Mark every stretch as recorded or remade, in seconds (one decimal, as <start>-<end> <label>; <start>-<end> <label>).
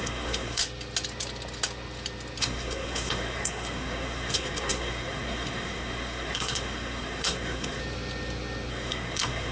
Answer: 0.0-0.6 remade; 0.6-2.4 recorded; 2.4-7.8 remade; 7.8-8.7 recorded; 8.7-9.5 remade